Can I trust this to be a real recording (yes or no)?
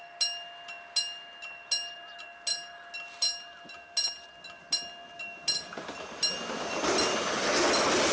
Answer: yes